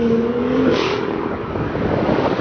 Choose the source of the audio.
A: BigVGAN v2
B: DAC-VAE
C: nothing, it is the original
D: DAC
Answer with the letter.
D